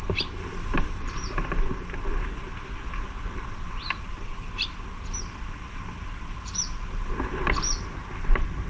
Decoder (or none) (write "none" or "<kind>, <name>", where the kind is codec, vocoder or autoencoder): none